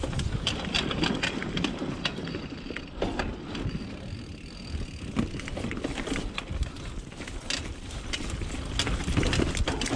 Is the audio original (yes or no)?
yes